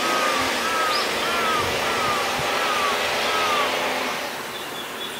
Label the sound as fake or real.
real